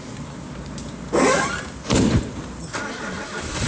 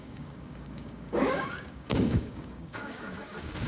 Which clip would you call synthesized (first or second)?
second